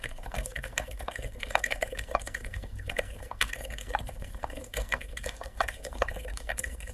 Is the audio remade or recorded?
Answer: remade